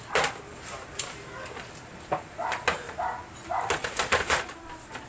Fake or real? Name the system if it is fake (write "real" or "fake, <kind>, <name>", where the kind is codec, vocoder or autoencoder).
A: real